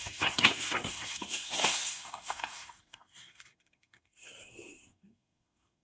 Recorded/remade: remade